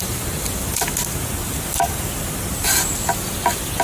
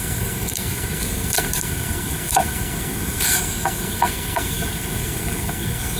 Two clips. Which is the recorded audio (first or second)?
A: first